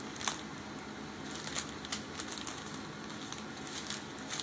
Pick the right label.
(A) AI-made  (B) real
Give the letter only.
B